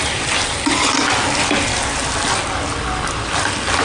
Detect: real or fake real